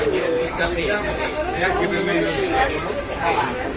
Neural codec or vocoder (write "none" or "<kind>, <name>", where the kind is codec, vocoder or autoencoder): codec, DAC